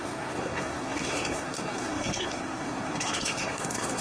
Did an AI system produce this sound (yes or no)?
yes